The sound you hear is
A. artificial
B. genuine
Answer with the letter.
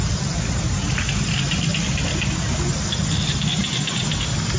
B